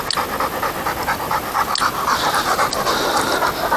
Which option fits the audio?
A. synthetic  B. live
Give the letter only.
B